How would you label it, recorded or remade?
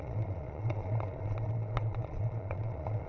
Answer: remade